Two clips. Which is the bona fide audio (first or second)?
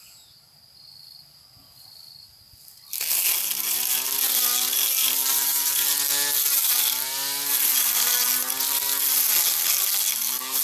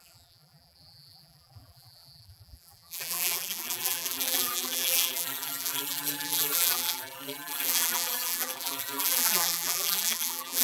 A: first